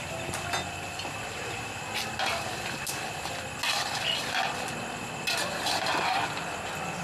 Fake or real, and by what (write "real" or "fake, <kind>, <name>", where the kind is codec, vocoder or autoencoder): real